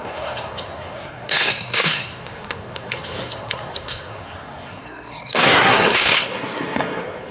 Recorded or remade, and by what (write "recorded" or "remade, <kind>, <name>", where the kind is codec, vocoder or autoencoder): remade, codec, SNAC